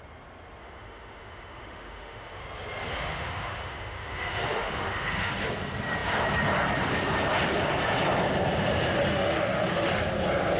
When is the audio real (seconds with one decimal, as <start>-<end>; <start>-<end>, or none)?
0.0-0.6; 2.4-2.9; 5.3-9.1; 9.9-10.6

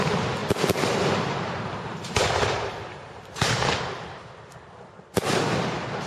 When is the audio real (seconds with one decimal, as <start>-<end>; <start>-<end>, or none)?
0.0-0.4; 3.7-6.1

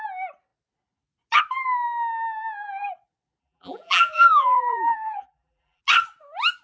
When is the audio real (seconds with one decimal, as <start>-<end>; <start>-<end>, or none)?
0.0-3.4; 5.8-6.6

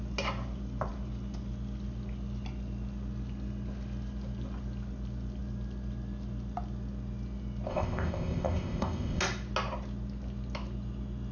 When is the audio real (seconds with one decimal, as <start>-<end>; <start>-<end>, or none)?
0.0-7.7; 9.2-11.3

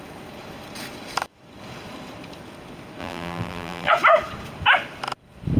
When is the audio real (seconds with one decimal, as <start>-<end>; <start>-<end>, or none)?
0.0-3.0; 3.9-5.6

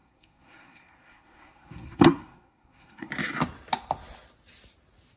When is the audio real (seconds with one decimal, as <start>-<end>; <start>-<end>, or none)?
3.1-5.2

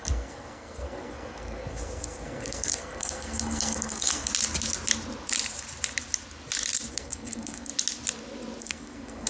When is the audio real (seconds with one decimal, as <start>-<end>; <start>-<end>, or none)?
4.3-6.9; 7.7-8.6

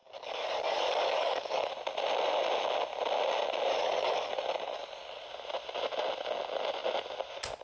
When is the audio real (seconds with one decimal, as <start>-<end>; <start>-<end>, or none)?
1.7-3.7; 4.3-7.6